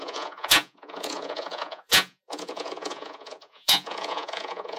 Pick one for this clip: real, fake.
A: fake